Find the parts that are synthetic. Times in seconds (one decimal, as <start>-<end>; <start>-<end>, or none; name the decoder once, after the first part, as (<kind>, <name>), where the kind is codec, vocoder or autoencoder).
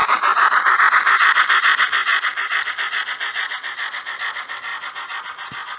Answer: 0.0-0.8 (vocoder, BigVGAN v2)